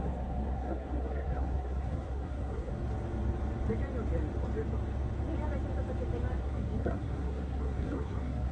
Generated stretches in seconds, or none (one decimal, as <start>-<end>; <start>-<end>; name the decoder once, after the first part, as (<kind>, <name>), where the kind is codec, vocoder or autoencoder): 0.0-2.7 (codec, SNAC); 6.4-8.5